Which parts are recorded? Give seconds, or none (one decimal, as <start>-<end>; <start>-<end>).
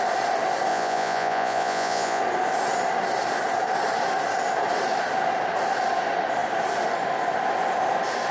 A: 0.0-0.7; 2.2-8.3